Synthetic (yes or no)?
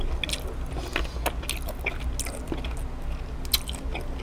no